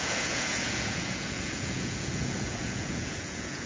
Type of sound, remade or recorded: remade